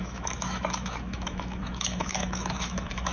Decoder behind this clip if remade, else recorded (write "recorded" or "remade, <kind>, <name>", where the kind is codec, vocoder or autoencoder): remade, autoencoder, DAC-VAE